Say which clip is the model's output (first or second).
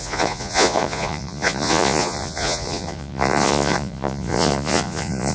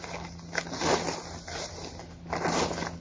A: first